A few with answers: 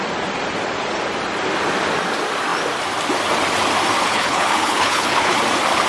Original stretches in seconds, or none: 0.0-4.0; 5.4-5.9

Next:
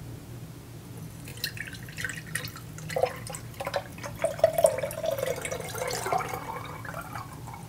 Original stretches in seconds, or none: 0.0-7.7